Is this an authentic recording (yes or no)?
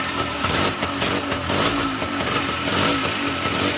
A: no